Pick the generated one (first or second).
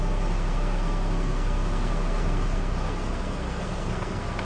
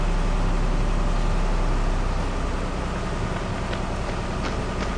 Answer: first